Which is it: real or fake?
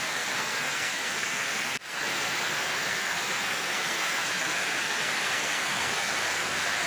fake